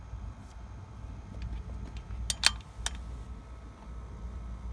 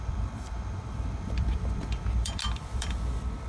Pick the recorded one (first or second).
first